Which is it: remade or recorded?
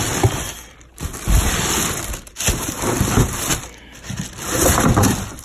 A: recorded